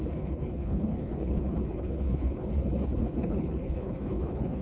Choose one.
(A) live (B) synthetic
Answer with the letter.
B